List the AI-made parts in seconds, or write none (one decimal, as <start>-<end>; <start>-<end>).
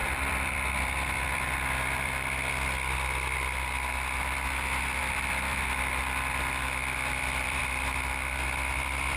0.0-2.5; 5.0-7.6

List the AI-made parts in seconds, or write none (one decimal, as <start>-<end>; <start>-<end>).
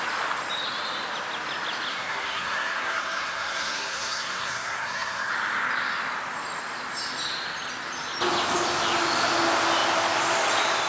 1.9-5.3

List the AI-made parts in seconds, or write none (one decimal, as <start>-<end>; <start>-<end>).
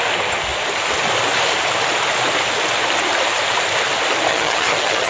4.3-5.1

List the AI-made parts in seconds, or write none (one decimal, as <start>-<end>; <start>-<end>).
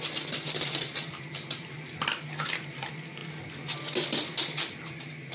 none